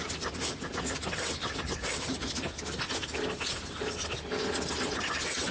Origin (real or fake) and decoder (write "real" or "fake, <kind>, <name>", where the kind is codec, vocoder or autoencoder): real